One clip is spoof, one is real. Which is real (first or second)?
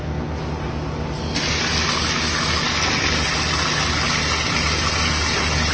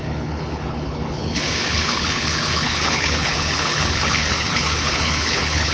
first